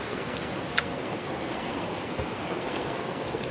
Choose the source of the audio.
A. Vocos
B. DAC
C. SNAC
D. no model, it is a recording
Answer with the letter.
C